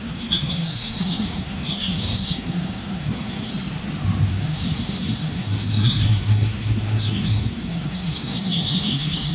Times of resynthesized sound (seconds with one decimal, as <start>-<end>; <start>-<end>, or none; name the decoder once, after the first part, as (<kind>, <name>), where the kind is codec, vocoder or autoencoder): 0.0-3.5 (codec, SNAC); 4.3-9.3